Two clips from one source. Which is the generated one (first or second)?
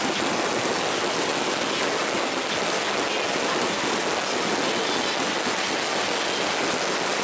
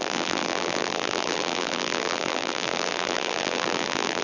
second